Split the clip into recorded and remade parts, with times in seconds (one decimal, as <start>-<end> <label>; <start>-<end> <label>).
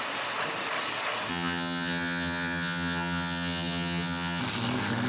0.0-1.3 recorded; 1.3-4.4 remade; 4.4-5.1 recorded